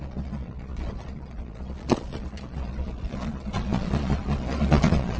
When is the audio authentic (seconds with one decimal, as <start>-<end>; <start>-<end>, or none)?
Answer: none